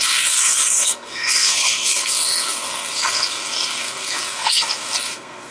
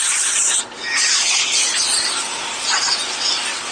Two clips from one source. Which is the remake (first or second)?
first